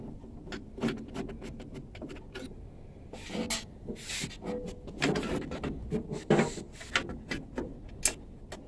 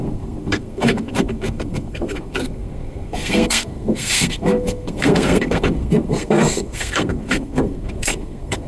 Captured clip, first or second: first